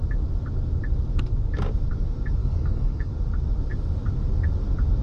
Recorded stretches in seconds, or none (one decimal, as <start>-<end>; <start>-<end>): 0.0-2.4; 3.1-5.0